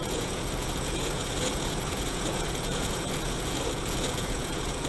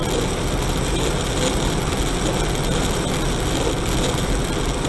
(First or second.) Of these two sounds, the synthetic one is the first